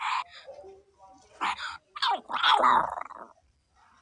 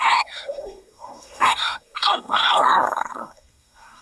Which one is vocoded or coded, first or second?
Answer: second